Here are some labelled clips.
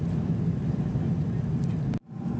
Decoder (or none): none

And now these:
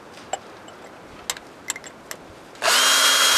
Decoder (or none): none